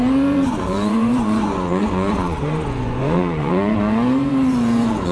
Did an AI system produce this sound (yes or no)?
yes